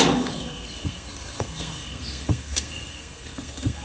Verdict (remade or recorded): remade